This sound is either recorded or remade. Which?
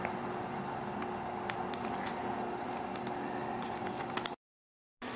recorded